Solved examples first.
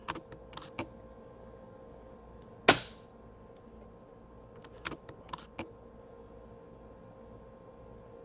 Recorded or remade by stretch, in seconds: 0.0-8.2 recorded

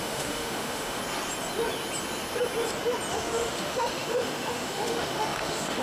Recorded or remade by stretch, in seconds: 0.0-1.0 remade; 1.0-3.1 recorded; 3.1-5.8 remade

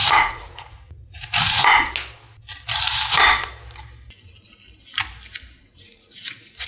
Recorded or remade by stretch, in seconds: 0.0-1.6 remade; 1.6-5.6 recorded; 5.6-6.7 remade